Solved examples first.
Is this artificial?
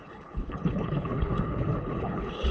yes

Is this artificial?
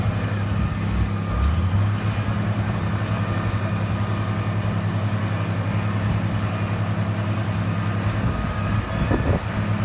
no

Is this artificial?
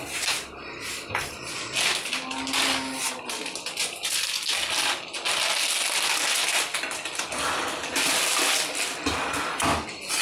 no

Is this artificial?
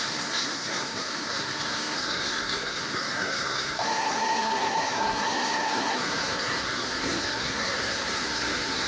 yes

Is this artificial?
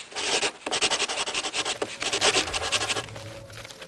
no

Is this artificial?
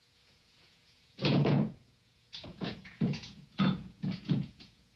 yes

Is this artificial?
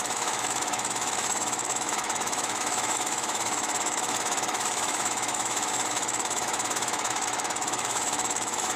yes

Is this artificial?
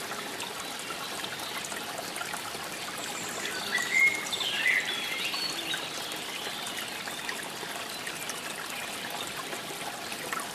no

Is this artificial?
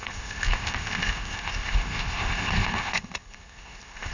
yes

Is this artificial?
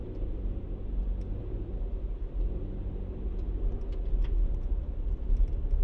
no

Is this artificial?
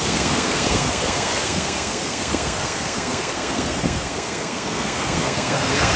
yes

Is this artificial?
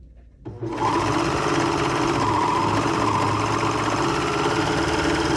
no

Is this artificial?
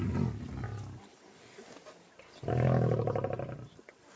no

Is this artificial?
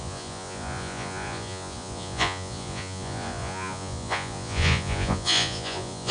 yes